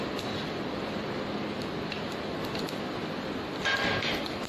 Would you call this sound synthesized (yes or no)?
no